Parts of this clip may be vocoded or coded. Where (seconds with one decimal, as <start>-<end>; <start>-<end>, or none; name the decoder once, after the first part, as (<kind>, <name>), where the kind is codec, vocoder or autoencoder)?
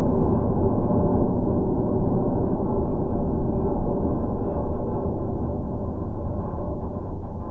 1.1-2.4 (vocoder, Vocos); 5.5-7.1